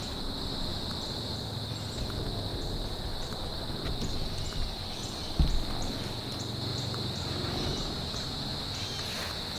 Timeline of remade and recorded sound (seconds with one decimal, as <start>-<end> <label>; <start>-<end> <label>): 0.0-6.7 recorded; 6.7-8.6 remade; 8.6-9.6 recorded